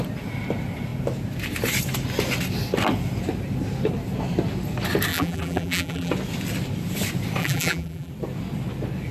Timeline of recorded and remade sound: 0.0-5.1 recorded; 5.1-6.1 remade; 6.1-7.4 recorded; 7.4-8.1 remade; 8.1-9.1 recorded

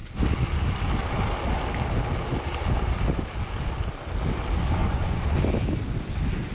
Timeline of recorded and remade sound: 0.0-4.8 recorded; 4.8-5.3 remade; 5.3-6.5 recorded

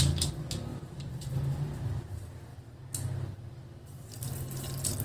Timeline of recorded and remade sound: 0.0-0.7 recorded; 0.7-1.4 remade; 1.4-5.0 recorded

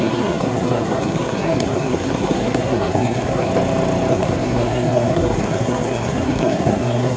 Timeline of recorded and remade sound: 0.0-3.5 remade; 3.5-4.1 recorded; 4.1-7.2 remade

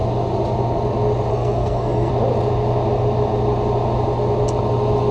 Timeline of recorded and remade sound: 0.0-1.3 recorded; 1.3-2.1 remade; 2.1-5.1 recorded